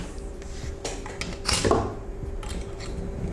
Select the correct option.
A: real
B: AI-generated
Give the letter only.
A